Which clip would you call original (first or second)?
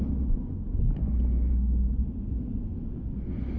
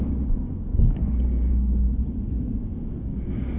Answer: first